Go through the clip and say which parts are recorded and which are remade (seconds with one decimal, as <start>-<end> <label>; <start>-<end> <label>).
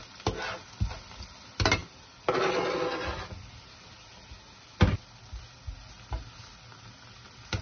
0.0-7.6 recorded